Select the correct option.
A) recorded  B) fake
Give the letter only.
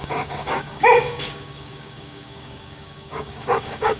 B